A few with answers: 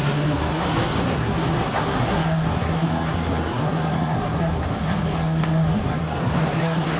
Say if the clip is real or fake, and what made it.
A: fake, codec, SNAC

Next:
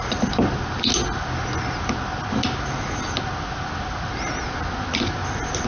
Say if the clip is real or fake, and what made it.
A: real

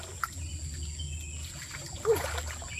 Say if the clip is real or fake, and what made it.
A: real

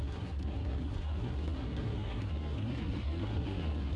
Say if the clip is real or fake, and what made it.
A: fake, codec, SNAC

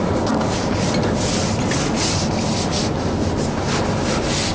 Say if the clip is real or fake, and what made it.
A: real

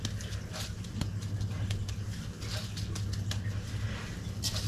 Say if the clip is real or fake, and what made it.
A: real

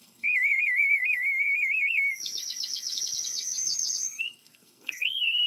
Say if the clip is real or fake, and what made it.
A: fake, codec, SNAC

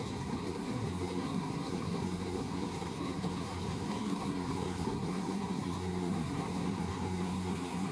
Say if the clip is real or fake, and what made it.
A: fake, codec, SNAC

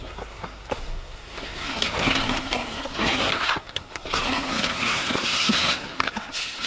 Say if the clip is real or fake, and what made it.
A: fake, codec, SNAC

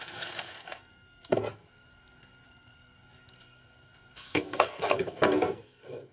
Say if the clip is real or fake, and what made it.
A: fake, codec, SNAC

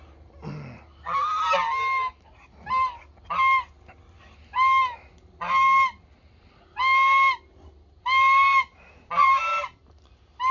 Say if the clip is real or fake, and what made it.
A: real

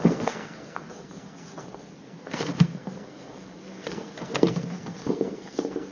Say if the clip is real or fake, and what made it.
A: fake, codec, SNAC